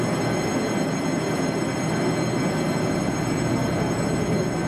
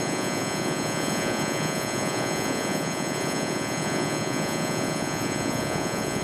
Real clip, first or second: first